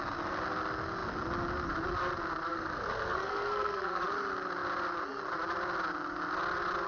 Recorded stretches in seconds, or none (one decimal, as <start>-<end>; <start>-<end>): 0.0-2.5; 4.0-6.9